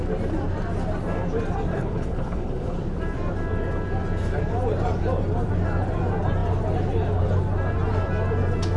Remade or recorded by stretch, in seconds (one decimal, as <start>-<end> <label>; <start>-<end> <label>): 0.0-1.7 recorded; 1.7-2.8 remade; 2.8-8.8 recorded